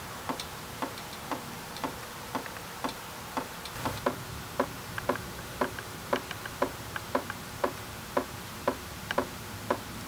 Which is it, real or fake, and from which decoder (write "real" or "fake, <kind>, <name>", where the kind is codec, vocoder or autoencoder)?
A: fake, vocoder, BigVGAN v2